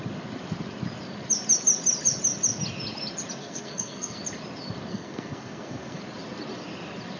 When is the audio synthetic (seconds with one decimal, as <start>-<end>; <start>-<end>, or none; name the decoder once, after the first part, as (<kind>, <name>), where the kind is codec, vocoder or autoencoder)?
3.4-4.2 (codec, SNAC); 4.9-6.0